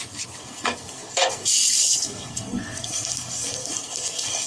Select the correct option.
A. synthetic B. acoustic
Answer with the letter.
A